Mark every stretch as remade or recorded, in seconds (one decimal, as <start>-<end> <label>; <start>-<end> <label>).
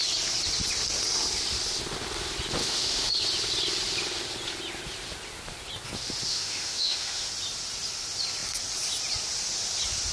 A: 0.0-2.6 recorded; 2.6-3.1 remade; 3.1-6.3 recorded; 6.3-7.3 remade; 7.3-10.1 recorded